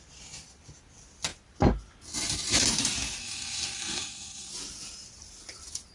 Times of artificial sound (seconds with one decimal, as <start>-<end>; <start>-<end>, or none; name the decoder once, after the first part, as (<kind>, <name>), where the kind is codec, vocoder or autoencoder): 3.2-4.5 (codec, SNAC)